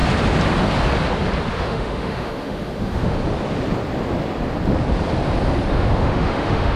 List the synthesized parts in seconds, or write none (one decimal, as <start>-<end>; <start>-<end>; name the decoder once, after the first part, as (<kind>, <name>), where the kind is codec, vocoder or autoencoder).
1.5-3.2 (autoencoder, DAC-VAE); 5.7-6.8